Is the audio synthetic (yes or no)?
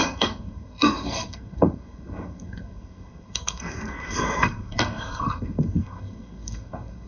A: yes